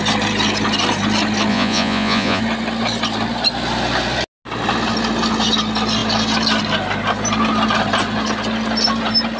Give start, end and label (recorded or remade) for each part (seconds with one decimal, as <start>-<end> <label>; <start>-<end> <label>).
0.0-1.5 recorded; 1.5-2.4 remade; 2.4-9.4 recorded